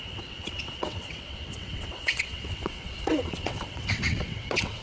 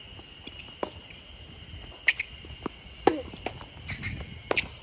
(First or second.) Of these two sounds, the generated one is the first